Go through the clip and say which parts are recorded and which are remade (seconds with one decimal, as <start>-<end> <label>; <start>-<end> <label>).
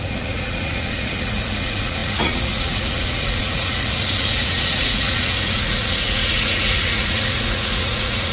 0.0-8.3 remade